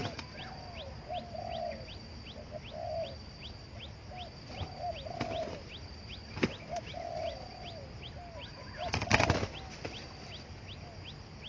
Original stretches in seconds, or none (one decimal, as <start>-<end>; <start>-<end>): 0.0-11.5